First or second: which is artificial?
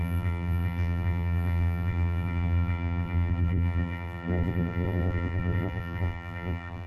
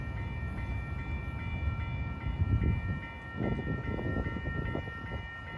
first